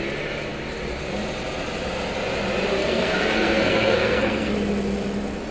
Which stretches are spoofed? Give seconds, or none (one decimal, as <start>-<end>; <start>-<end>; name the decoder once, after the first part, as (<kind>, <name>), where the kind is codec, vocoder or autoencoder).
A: 2.8-4.5 (codec, SNAC)